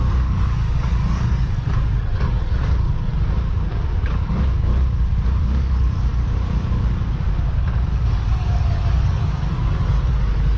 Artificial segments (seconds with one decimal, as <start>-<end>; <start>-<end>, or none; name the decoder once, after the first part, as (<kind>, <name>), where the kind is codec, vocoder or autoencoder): 0.0-3.1 (codec, DAC); 3.7-4.7; 5.4-10.6